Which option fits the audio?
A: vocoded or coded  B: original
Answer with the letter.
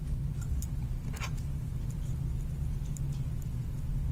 B